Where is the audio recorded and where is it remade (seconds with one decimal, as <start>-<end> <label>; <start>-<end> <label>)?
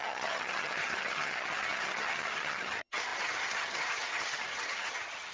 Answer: 0.0-5.3 remade